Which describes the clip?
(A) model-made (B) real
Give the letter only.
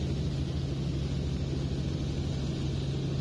B